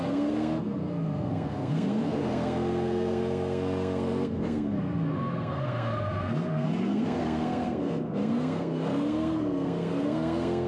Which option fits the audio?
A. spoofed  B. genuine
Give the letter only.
A